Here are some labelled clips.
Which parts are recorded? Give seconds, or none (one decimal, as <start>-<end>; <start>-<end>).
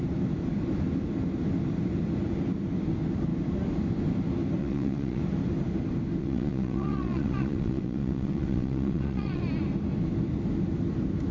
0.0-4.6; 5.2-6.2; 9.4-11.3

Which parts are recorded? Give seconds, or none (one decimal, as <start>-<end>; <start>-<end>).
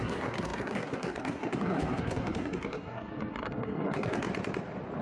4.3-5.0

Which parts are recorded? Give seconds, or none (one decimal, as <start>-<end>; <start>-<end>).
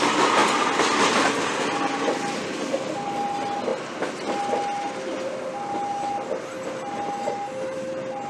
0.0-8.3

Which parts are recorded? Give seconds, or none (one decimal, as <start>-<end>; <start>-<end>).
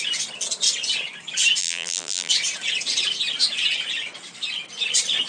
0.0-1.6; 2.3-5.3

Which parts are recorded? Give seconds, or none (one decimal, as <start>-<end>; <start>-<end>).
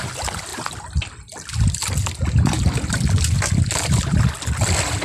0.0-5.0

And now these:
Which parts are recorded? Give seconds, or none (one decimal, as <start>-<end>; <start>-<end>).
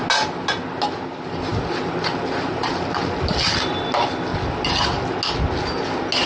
0.0-6.3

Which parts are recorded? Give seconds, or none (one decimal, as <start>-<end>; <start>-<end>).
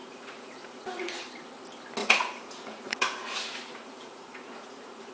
1.3-2.0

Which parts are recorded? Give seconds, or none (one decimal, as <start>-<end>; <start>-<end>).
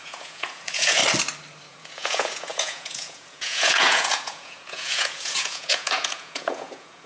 1.0-1.7